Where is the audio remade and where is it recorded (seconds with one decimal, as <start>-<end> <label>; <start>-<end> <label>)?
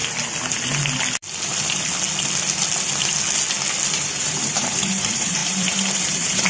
0.0-3.9 recorded; 3.9-6.5 remade